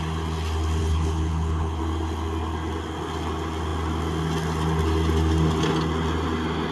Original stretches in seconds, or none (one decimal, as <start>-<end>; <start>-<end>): 0.0-0.8; 1.8-6.7